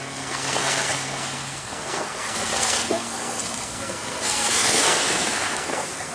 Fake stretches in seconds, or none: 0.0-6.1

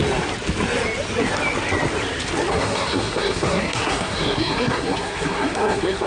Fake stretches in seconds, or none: 2.5-6.1

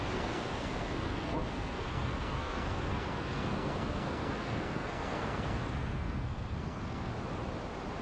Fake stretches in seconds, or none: 0.0-7.1

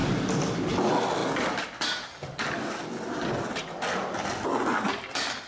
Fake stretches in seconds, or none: none